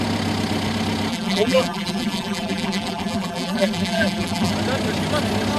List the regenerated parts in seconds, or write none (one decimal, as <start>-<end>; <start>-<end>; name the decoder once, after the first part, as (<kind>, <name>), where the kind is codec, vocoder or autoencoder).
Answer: 1.1-4.5 (vocoder, BigVGAN v2)